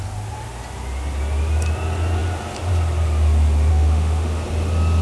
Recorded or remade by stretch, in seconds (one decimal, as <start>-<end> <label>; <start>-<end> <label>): 0.0-3.7 recorded; 3.7-4.4 remade; 4.4-5.0 recorded